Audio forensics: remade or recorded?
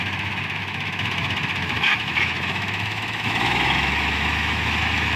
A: remade